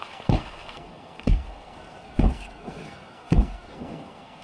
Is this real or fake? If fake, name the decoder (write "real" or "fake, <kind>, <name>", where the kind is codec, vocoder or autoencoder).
fake, codec, SNAC